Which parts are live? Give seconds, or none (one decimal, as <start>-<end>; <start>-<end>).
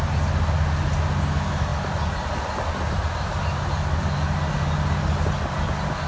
0.0-6.1